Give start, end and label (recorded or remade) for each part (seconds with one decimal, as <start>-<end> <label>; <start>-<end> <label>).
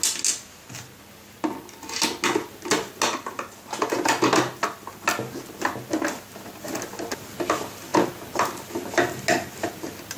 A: 0.0-10.2 recorded